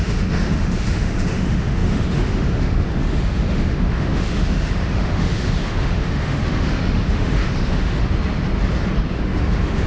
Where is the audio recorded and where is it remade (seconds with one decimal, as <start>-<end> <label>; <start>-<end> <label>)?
0.0-8.0 remade; 8.0-9.1 recorded; 9.1-9.9 remade